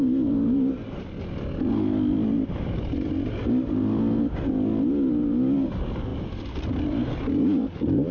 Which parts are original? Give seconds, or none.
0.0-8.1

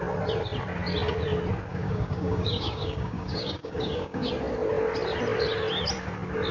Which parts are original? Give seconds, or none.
0.0-1.7; 4.3-6.5

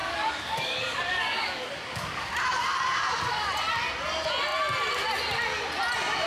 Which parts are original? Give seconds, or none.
2.3-6.3